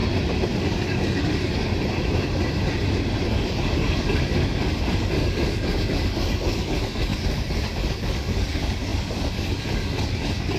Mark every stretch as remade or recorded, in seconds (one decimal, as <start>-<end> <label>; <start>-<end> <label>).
0.0-0.6 recorded; 0.6-1.7 remade; 1.7-3.3 recorded; 3.3-10.6 remade